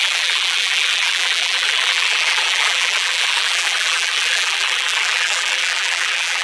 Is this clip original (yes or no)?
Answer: no